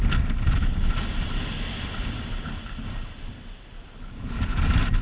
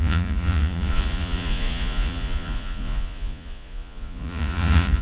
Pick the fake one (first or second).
second